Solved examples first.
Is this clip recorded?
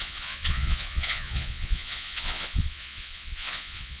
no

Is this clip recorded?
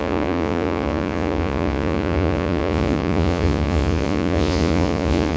no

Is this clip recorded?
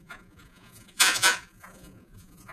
no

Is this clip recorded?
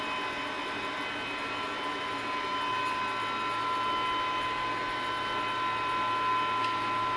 yes